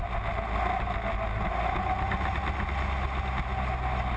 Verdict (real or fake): real